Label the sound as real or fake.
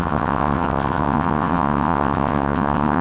fake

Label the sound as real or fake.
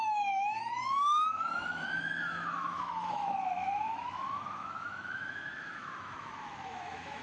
fake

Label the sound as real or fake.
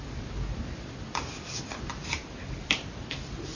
fake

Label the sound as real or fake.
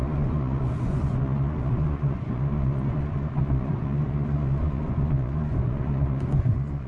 fake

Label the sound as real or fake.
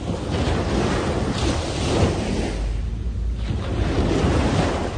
real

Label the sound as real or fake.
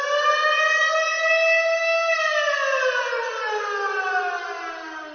real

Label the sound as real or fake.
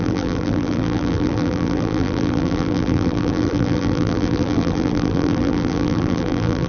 fake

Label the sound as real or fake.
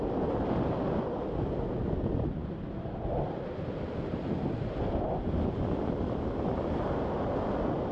real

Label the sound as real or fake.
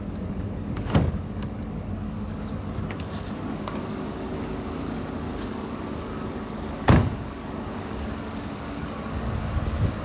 fake